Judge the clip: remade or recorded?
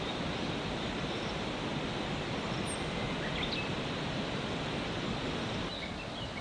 recorded